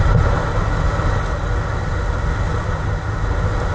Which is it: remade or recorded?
recorded